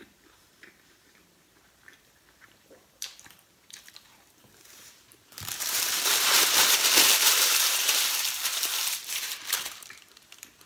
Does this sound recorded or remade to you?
remade